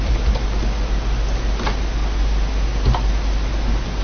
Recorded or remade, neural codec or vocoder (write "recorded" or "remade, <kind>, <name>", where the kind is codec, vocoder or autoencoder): recorded